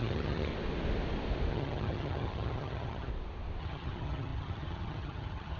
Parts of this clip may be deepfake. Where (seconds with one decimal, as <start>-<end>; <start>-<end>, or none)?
0.0-0.5; 1.5-3.1; 3.6-5.6